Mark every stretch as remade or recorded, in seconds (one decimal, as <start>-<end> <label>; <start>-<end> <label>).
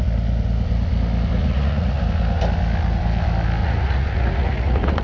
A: 0.0-1.4 recorded; 1.4-2.0 remade; 2.0-3.6 recorded; 3.6-5.0 remade